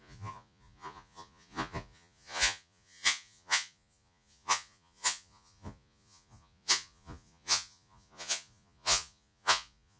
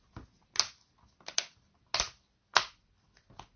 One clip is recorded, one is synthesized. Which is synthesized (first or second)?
first